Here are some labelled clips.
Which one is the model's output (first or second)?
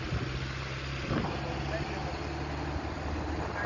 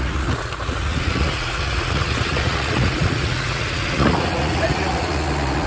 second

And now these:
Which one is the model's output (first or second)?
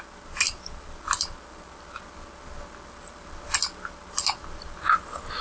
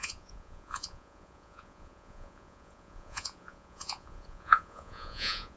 second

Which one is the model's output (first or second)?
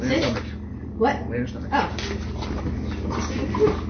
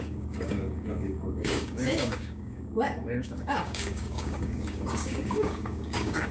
second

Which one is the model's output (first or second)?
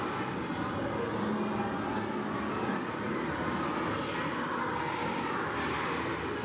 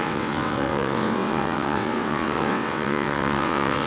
second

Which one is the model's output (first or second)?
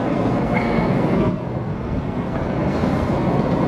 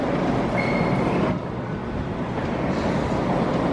first